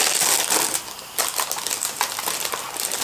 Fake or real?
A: real